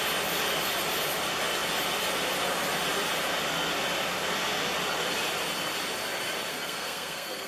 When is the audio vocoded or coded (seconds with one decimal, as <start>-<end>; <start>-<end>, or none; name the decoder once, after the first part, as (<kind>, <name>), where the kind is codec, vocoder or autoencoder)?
6.5-7.5 (codec, SNAC)